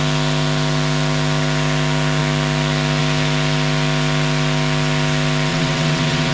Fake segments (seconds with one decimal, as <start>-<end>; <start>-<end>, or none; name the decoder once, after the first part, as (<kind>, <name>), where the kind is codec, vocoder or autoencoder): 5.5-6.3 (vocoder, WaveNeXt)